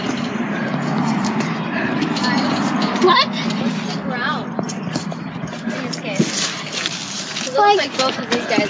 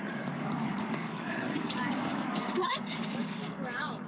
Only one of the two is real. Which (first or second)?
first